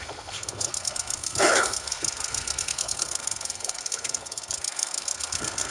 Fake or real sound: fake